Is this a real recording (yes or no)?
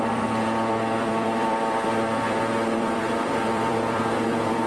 no